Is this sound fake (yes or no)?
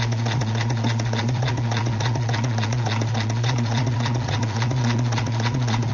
yes